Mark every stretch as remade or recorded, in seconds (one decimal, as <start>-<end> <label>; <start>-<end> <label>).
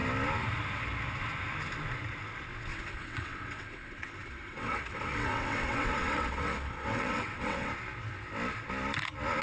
0.0-2.7 recorded; 2.7-7.7 remade; 7.7-9.4 recorded